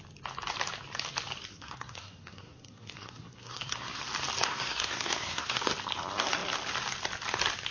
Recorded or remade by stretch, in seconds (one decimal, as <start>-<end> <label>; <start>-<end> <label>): 0.0-1.5 recorded; 1.5-4.0 remade; 4.0-4.4 recorded; 4.4-5.6 remade; 5.6-7.7 recorded